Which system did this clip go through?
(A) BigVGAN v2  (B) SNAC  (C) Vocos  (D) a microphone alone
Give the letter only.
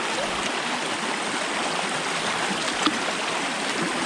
D